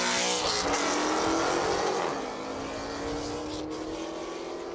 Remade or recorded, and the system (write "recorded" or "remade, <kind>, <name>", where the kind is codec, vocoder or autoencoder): recorded